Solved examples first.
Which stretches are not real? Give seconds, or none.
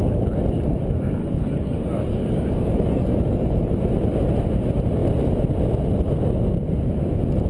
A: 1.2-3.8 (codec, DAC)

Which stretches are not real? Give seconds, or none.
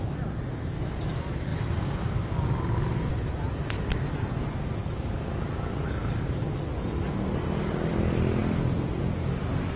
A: 4.8-6.7 (codec, DAC)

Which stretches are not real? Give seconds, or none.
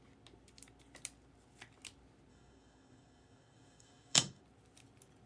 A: 2.3-4.4 (codec, DAC)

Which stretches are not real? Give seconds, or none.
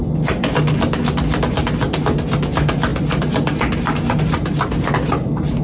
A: none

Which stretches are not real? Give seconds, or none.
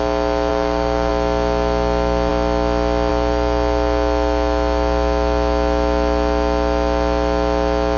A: 0.5-1.1 (codec, DAC)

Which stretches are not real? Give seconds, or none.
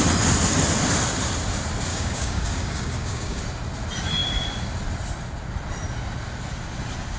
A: 1.9-3.4 (codec, DAC)